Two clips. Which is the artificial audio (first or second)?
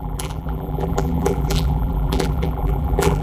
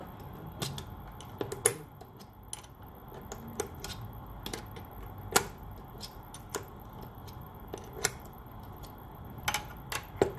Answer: first